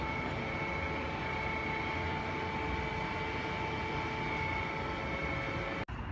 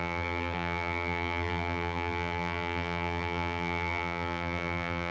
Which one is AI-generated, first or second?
second